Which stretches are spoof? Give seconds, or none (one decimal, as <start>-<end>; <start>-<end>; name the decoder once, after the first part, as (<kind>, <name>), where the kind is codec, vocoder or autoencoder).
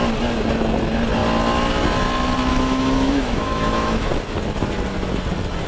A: 2.5-4.1 (autoencoder, DAC-VAE)